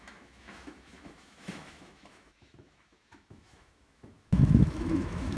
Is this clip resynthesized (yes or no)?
yes